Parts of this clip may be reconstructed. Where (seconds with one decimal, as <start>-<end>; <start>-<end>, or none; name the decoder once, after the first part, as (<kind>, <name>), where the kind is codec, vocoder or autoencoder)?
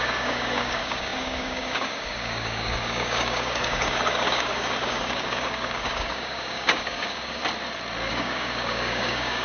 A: 0.0-7.4 (codec, DAC); 8.1-9.4